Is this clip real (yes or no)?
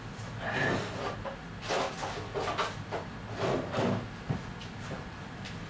yes